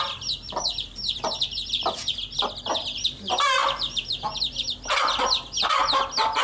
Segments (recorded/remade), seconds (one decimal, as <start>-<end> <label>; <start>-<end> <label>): 0.0-3.6 recorded; 3.6-5.7 remade; 5.7-6.4 recorded